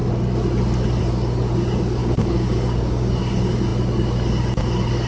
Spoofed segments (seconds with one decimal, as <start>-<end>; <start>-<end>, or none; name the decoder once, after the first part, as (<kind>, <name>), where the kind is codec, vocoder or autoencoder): 2.0-3.1 (codec, DAC)